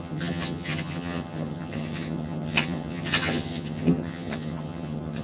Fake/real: fake